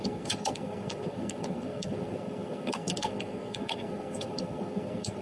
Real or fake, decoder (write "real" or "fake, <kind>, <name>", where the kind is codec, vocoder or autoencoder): fake, codec, SNAC